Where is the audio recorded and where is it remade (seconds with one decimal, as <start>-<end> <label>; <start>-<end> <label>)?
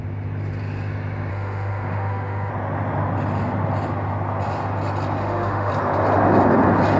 0.0-1.3 recorded; 1.3-2.5 remade; 2.5-5.2 recorded; 5.2-5.7 remade; 5.7-7.0 recorded